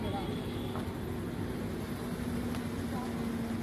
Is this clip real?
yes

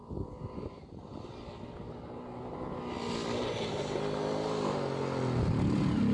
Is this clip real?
yes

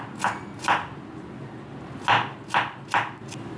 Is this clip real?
yes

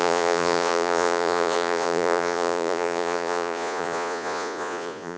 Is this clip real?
no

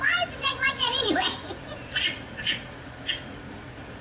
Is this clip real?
no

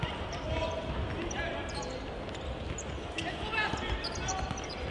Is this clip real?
yes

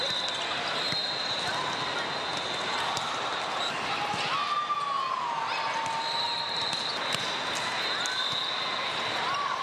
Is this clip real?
yes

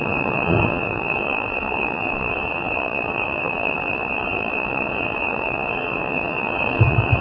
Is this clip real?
no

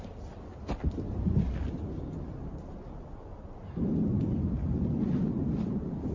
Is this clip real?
yes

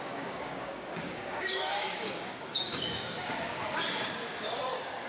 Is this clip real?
no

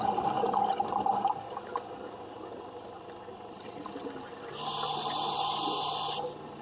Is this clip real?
yes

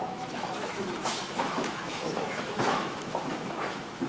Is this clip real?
no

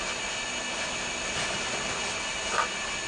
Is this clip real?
yes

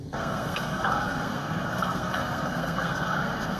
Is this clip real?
no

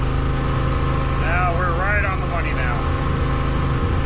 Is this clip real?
yes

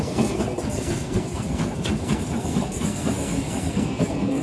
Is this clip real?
no